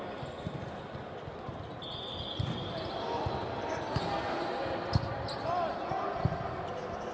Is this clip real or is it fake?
real